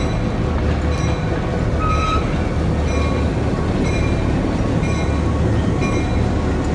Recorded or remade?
recorded